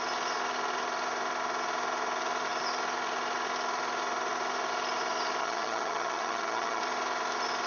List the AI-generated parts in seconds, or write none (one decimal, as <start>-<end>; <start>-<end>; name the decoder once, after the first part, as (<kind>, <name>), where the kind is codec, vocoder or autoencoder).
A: 5.4-6.8 (vocoder, HiFi-GAN)